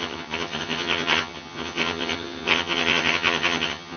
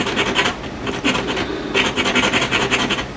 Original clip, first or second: second